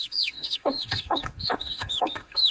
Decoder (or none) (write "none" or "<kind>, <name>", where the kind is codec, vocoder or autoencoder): autoencoder, DAC-VAE